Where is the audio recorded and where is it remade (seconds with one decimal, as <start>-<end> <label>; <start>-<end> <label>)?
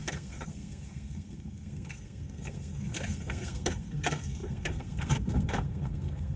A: 0.0-6.4 remade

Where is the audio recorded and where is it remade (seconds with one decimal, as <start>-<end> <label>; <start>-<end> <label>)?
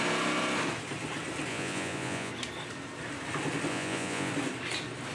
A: 0.0-1.5 recorded; 1.5-2.3 remade; 2.3-3.7 recorded; 3.7-4.3 remade; 4.3-5.1 recorded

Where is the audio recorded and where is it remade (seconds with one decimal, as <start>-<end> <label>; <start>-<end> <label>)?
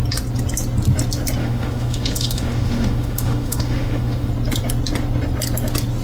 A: 0.0-1.4 recorded; 1.4-4.3 remade; 4.3-6.0 recorded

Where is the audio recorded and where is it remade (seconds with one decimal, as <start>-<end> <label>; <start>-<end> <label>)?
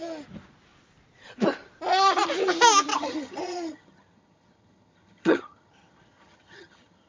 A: 0.0-2.9 recorded; 2.9-7.1 remade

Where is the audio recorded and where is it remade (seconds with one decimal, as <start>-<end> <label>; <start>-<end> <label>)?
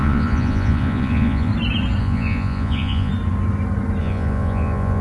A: 0.0-1.5 remade; 1.5-2.0 recorded; 2.0-3.1 remade; 3.1-4.0 recorded; 4.0-5.0 remade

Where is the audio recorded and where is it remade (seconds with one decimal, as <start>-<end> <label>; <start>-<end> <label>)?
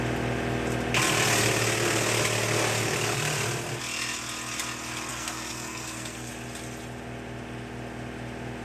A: 0.0-5.1 recorded; 5.1-6.3 remade; 6.3-8.6 recorded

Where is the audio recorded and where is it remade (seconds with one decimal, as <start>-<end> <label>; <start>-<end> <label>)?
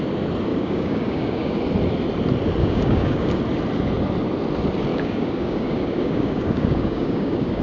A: 0.0-0.5 recorded; 0.5-1.6 remade; 1.6-2.6 recorded; 2.6-3.4 remade; 3.4-4.9 recorded; 4.9-7.6 remade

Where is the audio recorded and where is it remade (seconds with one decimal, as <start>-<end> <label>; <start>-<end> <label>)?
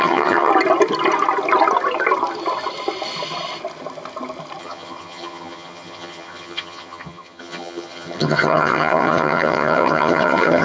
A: 0.0-0.5 remade; 0.5-4.6 recorded; 4.6-10.6 remade